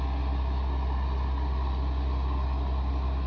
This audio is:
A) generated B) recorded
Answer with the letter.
B